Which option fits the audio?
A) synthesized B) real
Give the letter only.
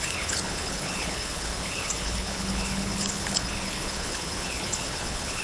A